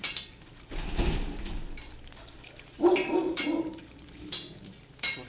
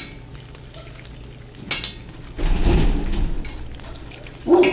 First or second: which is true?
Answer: second